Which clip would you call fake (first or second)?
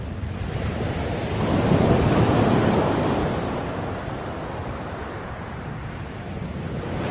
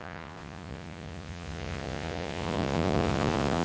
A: second